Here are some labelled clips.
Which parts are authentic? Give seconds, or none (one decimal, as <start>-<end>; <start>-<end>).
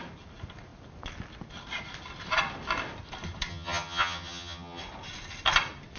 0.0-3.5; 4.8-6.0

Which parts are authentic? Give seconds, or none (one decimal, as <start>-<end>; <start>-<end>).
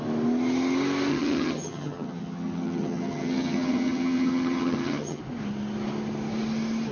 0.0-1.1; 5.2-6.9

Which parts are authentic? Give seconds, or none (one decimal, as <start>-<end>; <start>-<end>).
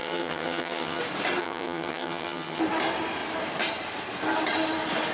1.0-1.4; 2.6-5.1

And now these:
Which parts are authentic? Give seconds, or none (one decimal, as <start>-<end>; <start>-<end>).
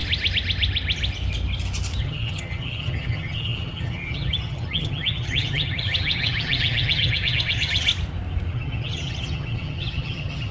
0.0-2.0; 7.9-8.5